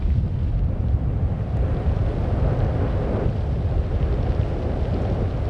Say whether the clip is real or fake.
real